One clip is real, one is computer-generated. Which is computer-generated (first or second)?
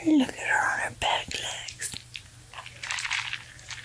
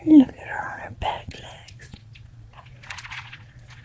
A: second